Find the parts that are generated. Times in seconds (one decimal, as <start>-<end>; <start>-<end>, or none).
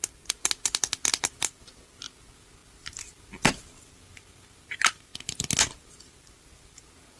none